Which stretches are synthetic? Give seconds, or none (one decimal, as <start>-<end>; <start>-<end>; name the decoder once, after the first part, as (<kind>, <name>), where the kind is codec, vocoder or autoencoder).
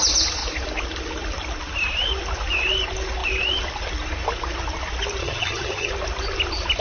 5.2-5.9 (vocoder, HiFi-GAN)